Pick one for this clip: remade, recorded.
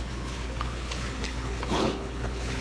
remade